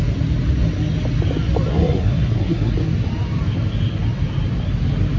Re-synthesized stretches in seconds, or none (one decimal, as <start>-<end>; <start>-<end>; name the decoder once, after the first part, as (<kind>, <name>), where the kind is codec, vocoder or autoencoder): 1.7-2.7 (codec, SNAC)

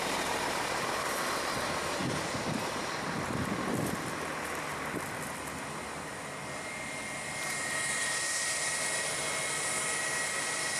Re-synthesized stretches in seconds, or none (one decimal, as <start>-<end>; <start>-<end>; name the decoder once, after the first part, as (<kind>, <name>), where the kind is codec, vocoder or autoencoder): none